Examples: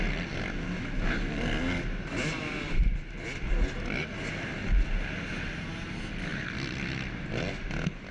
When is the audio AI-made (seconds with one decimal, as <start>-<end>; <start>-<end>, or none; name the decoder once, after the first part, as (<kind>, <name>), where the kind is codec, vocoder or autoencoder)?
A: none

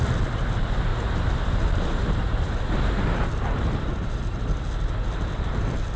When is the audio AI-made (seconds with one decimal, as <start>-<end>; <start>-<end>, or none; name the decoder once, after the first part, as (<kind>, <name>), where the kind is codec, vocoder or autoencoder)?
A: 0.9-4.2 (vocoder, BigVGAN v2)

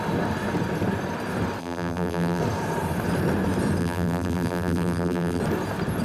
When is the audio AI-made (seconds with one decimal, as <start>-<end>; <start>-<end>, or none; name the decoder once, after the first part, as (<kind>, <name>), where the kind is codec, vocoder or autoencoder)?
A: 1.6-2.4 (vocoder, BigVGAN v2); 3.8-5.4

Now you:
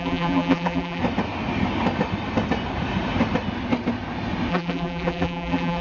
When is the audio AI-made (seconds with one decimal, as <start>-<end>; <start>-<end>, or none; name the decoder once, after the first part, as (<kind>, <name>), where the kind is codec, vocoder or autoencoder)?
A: 0.0-1.0 (vocoder, BigVGAN v2); 4.5-5.8

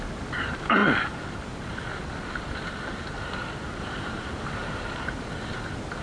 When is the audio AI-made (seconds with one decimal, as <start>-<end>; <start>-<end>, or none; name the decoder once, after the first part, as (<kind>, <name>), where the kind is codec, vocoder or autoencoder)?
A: 0.0-0.8 (vocoder, BigVGAN v2); 3.8-4.6